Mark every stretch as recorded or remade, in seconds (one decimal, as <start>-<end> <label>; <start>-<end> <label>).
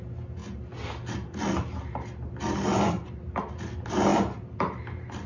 0.0-5.3 recorded